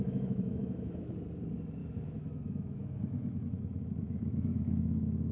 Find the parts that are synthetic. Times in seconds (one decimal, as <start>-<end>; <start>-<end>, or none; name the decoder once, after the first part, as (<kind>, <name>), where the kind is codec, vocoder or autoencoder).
0.0-1.1 (autoencoder, DAC-VAE); 1.8-5.3